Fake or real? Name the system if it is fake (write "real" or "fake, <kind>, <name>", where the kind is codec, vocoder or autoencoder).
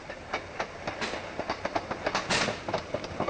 real